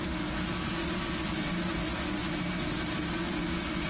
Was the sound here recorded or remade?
recorded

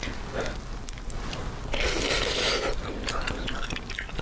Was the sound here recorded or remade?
recorded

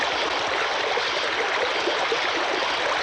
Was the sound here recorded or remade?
recorded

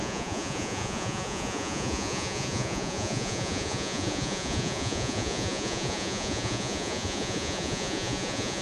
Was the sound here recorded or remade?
remade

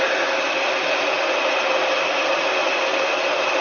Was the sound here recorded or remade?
recorded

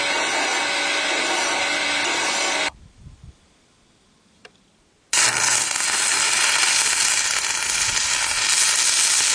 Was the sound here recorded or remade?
recorded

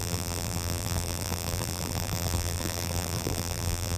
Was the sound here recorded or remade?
remade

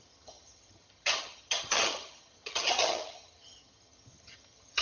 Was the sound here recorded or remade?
remade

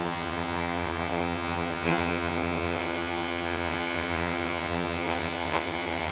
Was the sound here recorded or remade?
remade